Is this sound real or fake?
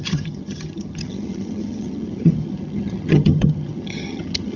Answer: fake